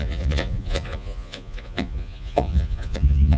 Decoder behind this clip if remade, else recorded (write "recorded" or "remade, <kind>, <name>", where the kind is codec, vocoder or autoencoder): remade, vocoder, Vocos